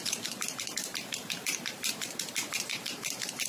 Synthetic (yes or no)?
yes